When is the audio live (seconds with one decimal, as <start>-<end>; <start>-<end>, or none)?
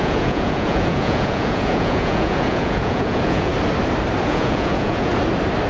3.5-4.2; 5.1-5.7